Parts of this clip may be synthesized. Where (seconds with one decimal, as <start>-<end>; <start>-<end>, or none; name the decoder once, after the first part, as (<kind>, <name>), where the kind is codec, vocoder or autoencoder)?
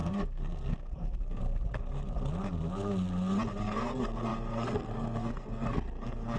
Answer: 0.0-1.4 (codec, SNAC); 3.6-6.4